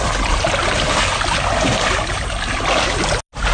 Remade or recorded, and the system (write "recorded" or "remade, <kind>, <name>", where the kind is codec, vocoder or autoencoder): recorded